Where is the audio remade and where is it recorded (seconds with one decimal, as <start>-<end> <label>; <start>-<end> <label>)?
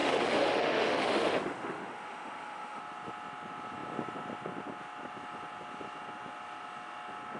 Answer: 0.0-2.8 remade; 2.8-7.4 recorded